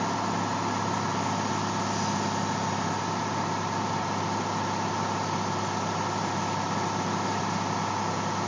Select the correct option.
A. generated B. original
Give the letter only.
B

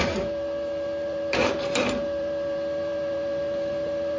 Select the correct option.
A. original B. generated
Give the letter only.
B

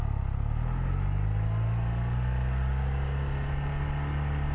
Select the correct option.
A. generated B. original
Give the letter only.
B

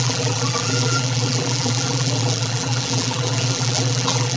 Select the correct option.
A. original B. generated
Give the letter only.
B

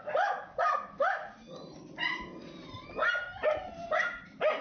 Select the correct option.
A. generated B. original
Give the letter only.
B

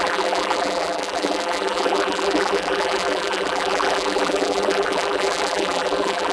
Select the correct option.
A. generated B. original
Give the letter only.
A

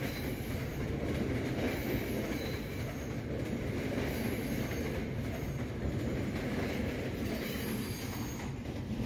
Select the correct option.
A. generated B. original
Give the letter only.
B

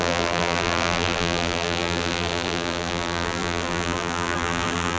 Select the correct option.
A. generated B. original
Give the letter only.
A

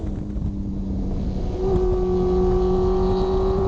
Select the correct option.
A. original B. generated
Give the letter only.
A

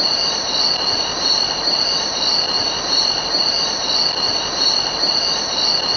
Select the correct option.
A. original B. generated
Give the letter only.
A